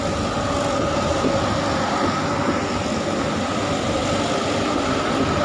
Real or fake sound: real